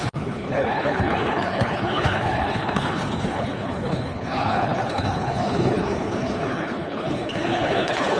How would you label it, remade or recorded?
remade